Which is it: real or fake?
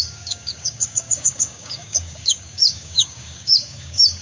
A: fake